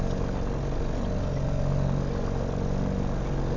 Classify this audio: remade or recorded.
recorded